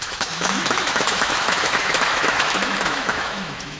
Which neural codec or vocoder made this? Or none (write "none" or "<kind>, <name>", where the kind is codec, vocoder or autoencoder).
autoencoder, DAC-VAE